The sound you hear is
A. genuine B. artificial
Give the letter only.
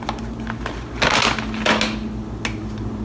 A